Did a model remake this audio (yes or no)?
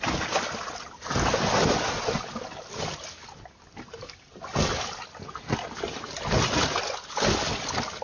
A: no